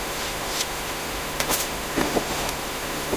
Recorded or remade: remade